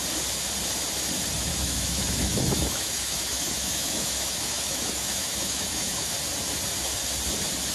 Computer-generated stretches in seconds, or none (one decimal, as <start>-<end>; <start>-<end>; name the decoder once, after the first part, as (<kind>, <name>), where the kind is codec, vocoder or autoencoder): 1.5-6.1 (autoencoder, DAC-VAE)